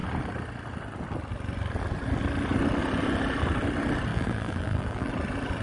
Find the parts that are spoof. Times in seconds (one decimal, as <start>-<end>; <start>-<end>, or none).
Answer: 4.1-5.1

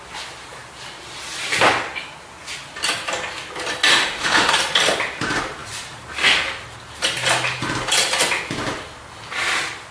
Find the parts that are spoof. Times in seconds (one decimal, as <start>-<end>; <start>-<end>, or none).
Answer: 3.9-4.5